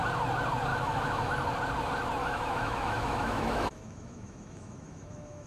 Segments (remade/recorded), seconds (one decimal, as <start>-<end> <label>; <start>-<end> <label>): 0.0-0.7 recorded; 0.7-1.3 remade; 1.3-2.2 recorded; 2.2-5.5 remade